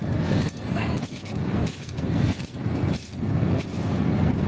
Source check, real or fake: fake